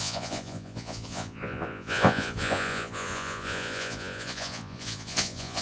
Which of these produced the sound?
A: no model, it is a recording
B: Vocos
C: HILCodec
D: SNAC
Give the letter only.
B